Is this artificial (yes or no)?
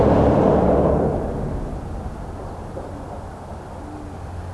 no